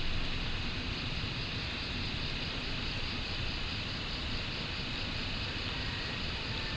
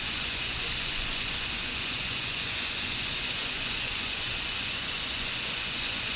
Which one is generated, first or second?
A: second